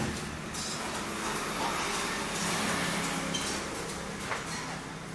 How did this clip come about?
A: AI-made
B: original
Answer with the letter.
B